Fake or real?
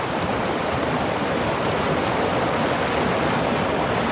real